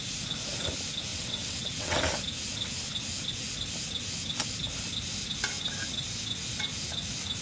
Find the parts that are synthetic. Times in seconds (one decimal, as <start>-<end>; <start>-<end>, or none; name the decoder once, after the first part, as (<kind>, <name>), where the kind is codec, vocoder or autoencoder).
1.1-2.0 (vocoder, WaveNeXt)